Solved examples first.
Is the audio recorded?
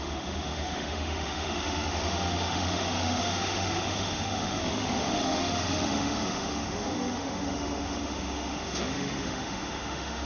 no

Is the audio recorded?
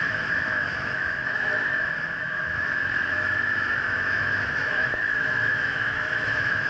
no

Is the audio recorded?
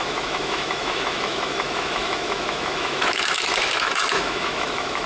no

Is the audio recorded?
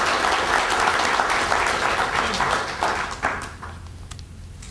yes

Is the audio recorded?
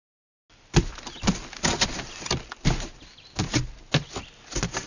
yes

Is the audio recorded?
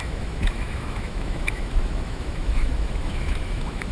no